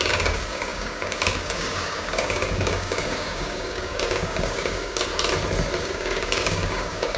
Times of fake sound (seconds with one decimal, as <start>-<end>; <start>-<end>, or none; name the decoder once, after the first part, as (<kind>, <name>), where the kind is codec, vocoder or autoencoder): 0.0-5.1 (codec, DAC); 5.8-7.2